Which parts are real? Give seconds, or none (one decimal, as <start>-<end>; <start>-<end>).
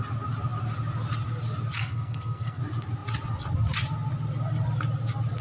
0.0-1.8; 2.6-5.4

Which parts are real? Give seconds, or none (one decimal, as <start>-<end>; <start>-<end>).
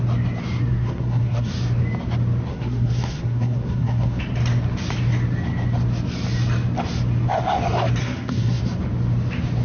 0.0-0.7; 1.5-2.5; 4.2-8.0; 8.6-9.6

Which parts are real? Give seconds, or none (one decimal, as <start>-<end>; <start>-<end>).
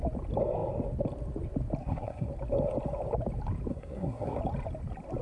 0.0-1.8; 2.3-3.7; 4.4-5.2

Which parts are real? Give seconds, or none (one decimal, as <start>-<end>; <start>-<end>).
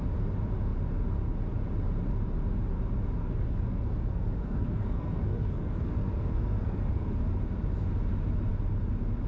0.0-3.2; 7.2-9.3